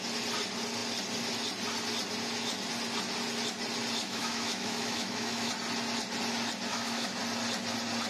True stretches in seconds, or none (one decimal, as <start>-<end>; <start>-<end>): 0.0-4.0; 5.5-6.7; 7.2-8.1